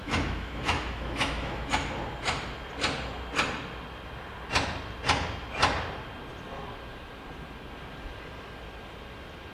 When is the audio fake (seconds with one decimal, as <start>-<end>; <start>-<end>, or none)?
0.0-1.7

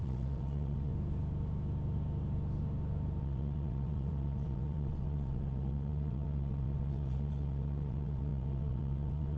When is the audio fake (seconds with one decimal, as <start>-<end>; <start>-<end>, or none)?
0.0-0.9; 3.2-9.4